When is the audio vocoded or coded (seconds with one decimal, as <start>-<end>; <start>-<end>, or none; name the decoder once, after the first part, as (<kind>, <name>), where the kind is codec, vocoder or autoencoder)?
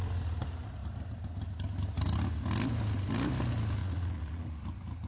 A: 3.8-4.6 (vocoder, Vocos)